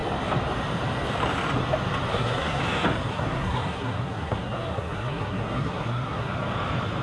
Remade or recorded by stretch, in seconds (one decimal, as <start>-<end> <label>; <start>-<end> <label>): 0.0-2.1 recorded; 2.1-2.6 remade; 2.6-3.1 recorded; 3.1-6.3 remade; 6.3-7.0 recorded